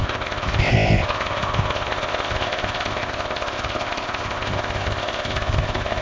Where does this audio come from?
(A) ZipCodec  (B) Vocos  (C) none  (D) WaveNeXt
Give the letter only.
A